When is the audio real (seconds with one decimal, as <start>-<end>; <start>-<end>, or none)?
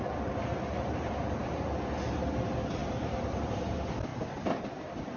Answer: 0.0-0.5; 1.4-2.8; 3.6-5.2